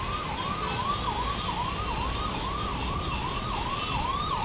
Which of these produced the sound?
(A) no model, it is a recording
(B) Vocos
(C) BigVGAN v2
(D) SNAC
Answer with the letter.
A